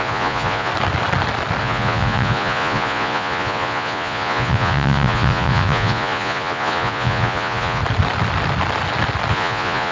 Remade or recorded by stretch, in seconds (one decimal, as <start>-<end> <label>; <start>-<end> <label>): 0.0-0.7 remade; 0.7-1.6 recorded; 1.6-7.8 remade; 7.8-9.3 recorded; 9.3-9.9 remade